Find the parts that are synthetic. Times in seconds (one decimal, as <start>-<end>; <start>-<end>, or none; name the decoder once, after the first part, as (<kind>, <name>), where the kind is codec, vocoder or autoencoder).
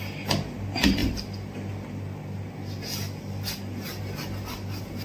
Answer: none